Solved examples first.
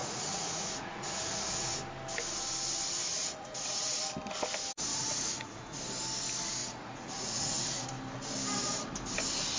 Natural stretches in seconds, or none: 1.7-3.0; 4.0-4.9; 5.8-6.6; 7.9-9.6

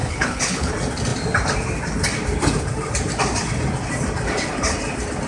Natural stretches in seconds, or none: 0.7-5.3

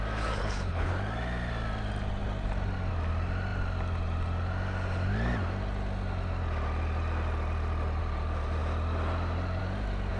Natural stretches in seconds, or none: 0.0-0.4; 0.9-10.2